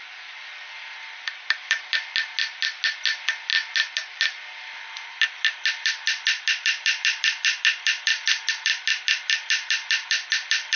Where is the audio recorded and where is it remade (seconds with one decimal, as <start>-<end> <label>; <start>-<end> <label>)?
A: 0.0-10.8 recorded